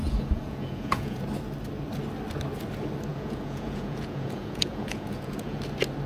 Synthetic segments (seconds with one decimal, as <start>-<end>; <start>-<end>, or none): 0.0-1.2; 3.1-5.6